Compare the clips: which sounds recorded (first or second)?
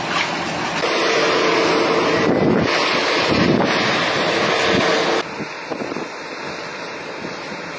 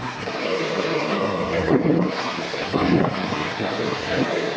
first